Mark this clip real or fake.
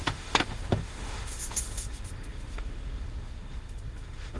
fake